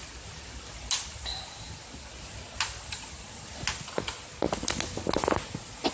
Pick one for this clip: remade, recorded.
recorded